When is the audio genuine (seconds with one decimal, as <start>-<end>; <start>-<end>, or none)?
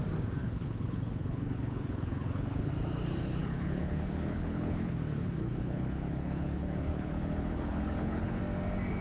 0.0-0.4; 2.7-3.4; 8.4-9.0